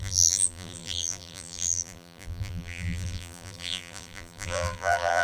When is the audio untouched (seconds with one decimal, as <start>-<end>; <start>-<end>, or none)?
none

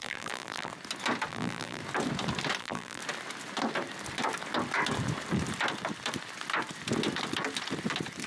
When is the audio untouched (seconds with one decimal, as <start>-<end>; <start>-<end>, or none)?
0.7-1.3; 1.8-2.6; 3.0-8.3

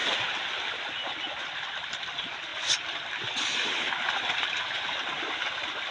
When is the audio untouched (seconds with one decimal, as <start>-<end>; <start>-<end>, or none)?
0.0-5.9

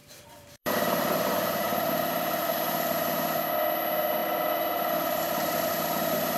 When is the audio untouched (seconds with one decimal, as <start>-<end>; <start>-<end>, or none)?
2.5-4.2; 5.7-6.4

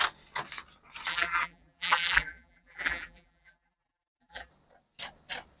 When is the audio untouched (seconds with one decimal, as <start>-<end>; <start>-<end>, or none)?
0.0-1.1; 4.5-5.6